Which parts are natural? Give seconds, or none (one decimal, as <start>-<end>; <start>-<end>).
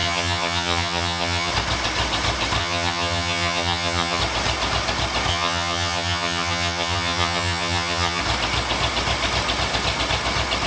1.5-2.6; 4.2-5.3; 8.2-10.7